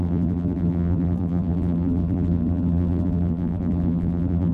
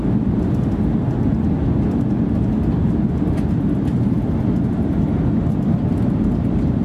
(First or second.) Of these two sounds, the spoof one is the first